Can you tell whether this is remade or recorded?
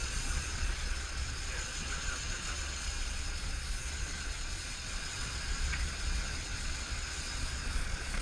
remade